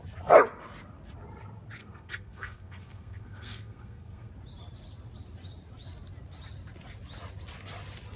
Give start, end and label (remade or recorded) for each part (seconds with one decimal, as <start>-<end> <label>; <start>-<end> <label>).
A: 0.0-1.8 recorded; 1.8-4.3 remade; 4.3-8.2 recorded